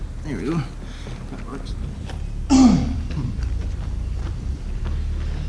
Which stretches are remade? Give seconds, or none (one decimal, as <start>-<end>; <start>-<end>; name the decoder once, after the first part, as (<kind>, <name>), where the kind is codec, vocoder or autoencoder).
1.5-4.8 (vocoder, BigVGAN v2)